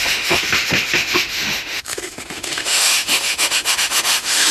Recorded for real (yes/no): no